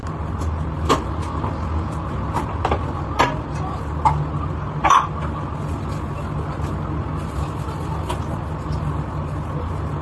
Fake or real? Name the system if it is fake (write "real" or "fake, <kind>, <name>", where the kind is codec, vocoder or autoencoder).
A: real